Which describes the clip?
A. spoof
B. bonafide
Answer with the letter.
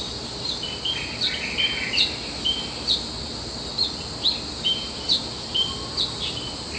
B